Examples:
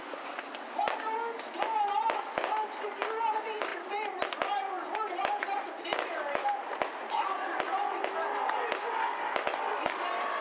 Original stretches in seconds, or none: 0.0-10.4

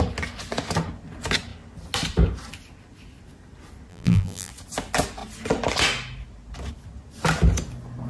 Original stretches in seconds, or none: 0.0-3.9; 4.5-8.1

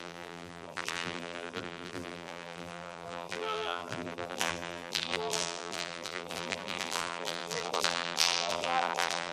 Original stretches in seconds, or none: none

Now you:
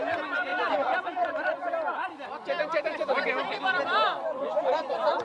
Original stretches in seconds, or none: 0.0-2.6; 3.8-5.2